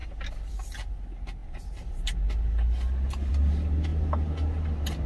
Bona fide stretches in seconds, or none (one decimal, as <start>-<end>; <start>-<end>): 0.0-5.1